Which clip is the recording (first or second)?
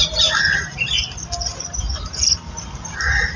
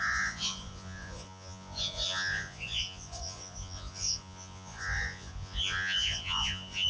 first